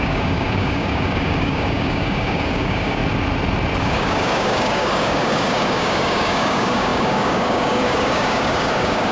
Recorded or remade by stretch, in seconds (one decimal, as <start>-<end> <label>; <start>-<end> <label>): 0.0-3.0 remade; 3.0-3.8 recorded; 3.8-9.1 remade